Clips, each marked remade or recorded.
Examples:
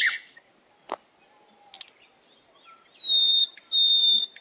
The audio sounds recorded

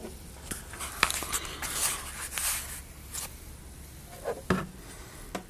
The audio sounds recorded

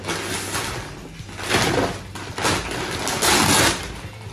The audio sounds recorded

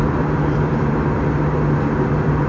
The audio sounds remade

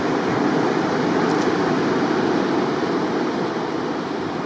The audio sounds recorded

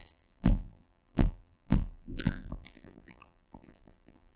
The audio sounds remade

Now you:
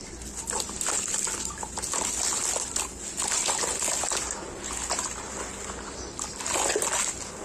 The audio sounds recorded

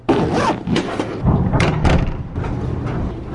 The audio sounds remade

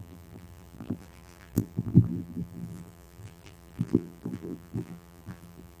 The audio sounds remade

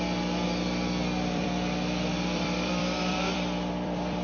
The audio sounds remade